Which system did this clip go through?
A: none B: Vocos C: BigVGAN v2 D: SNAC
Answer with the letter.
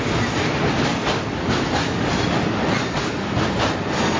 A